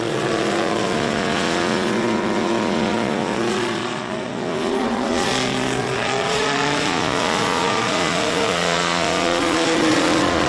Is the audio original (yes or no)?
no